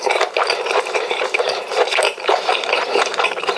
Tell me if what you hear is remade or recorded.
remade